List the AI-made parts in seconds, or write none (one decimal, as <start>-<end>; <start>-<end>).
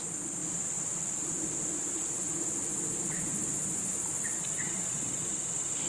4.6-5.3